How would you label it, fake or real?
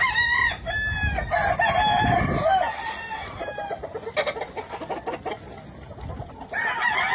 real